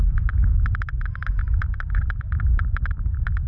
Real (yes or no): yes